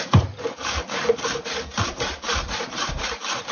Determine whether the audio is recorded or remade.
remade